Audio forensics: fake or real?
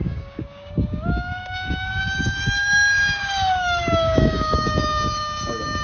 fake